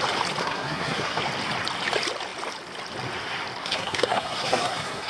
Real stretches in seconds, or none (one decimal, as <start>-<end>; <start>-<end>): 0.0-0.4; 1.2-3.6